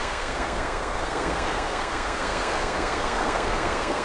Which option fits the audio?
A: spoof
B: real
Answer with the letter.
A